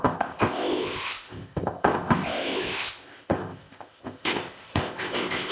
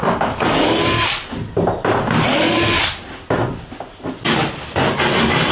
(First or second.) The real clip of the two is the second